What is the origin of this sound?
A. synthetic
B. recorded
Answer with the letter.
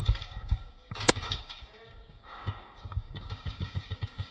A